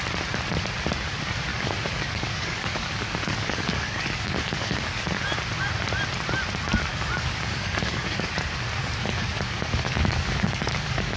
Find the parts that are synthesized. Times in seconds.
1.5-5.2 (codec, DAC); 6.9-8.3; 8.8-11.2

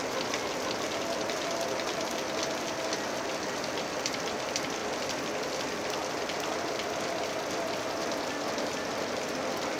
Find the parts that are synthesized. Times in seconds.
none

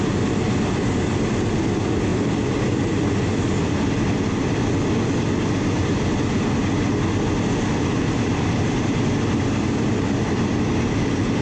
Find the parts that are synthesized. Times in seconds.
none

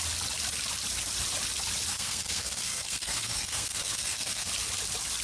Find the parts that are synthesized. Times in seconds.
1.9-4.5 (codec, SNAC)

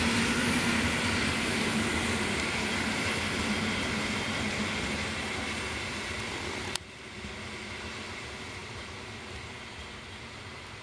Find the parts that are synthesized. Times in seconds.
none

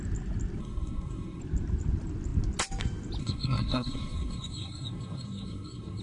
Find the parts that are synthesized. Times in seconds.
0.6-1.4 (codec, SNAC); 3.2-6.0

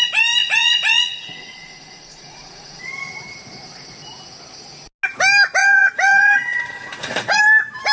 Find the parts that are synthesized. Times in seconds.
0.4-2.8 (vocoder, Vocos); 5.6-7.4

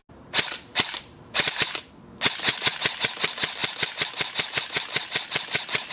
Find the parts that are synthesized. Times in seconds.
0.7-1.9 (vocoder, BigVGAN v2)